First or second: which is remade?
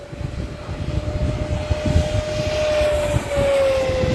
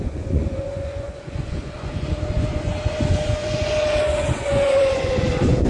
second